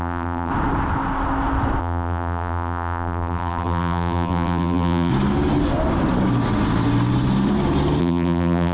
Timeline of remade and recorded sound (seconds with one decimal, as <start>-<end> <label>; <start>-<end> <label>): 0.0-0.5 remade; 0.5-1.8 recorded; 1.8-5.1 remade; 5.1-8.0 recorded; 8.0-8.7 remade